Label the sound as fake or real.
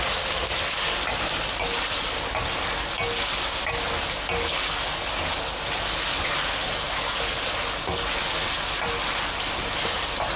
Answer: real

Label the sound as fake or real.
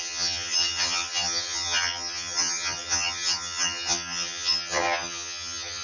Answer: fake